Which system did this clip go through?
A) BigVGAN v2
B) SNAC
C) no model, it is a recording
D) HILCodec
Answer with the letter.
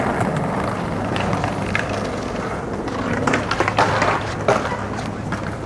A